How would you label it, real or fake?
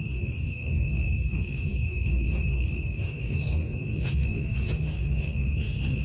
fake